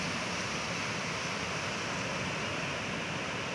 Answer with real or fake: real